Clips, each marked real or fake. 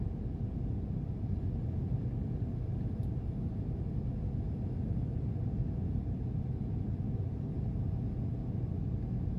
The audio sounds real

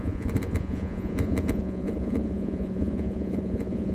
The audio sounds fake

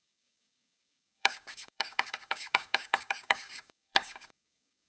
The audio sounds fake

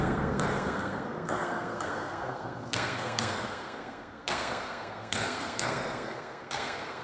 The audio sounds fake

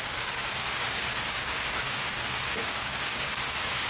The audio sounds fake